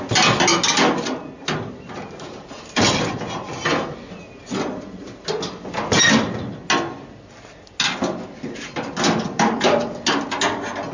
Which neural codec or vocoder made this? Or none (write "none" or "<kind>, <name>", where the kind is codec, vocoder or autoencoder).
none